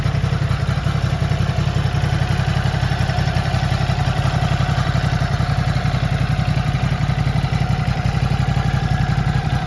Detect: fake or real real